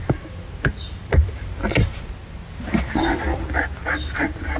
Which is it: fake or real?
real